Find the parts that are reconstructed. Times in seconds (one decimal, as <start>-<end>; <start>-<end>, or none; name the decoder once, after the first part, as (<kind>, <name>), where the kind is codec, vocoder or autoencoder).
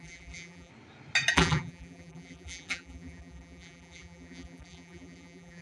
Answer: 0.0-0.7 (vocoder, BigVGAN v2); 1.3-5.6